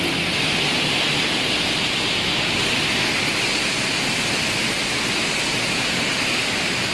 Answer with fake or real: real